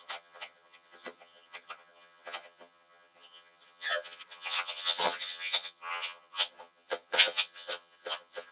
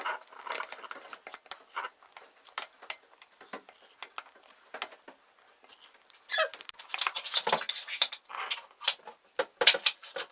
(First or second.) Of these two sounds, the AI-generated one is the first